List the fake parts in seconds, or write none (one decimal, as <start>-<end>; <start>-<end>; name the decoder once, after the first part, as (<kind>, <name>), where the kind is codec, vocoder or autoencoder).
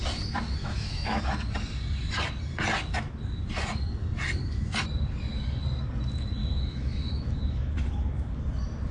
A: 0.6-1.2 (autoencoder, DAC-VAE); 6.4-7.7